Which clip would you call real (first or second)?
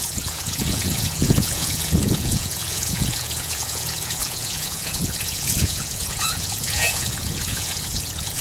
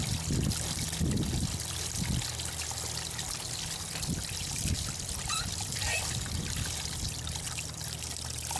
second